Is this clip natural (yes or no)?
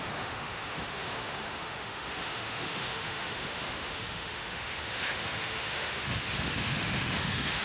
no